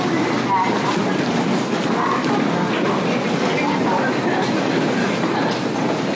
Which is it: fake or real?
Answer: real